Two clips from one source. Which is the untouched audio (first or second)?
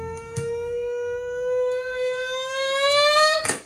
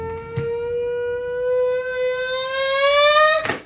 second